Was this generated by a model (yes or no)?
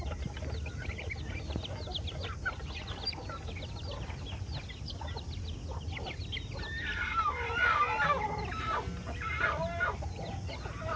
no